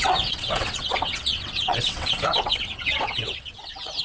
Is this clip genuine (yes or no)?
no